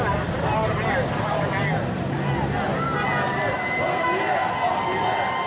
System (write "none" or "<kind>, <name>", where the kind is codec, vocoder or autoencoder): none